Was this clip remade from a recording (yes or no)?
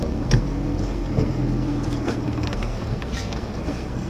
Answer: yes